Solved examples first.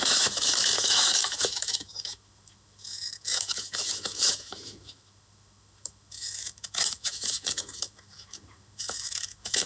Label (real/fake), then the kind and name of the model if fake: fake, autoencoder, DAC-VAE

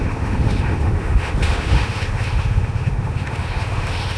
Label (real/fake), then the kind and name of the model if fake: fake, autoencoder, DAC-VAE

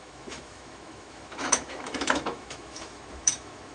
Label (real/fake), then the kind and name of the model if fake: fake, autoencoder, DAC-VAE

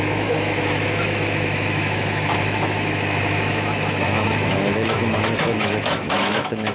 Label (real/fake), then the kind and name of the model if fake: fake, autoencoder, DAC-VAE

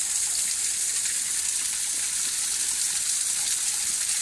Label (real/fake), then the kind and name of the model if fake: real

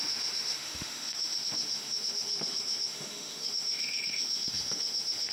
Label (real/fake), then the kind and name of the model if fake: fake, autoencoder, DAC-VAE